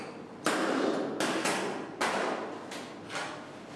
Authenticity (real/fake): real